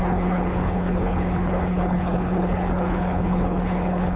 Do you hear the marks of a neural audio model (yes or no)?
yes